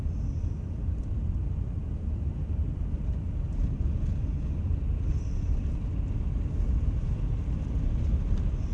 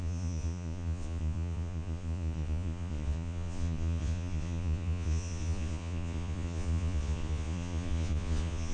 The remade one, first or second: second